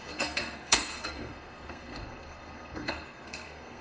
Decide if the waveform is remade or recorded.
remade